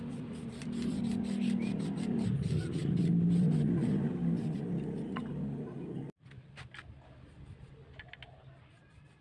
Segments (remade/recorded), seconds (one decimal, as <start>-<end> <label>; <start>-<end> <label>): 0.0-9.2 recorded